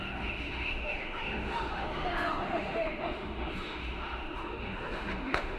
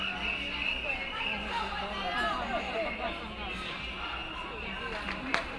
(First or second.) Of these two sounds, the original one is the second